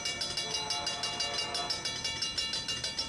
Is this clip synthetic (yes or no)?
no